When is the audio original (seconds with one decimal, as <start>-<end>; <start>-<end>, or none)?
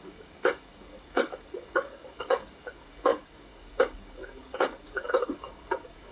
none